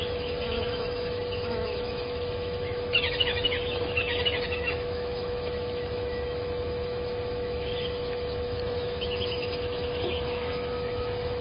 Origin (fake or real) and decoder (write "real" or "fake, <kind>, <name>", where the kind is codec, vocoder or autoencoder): fake, autoencoder, DAC-VAE